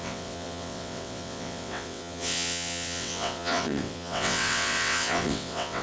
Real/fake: fake